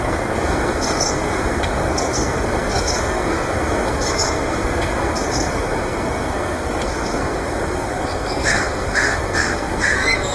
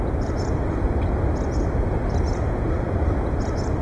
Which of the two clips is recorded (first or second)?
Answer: second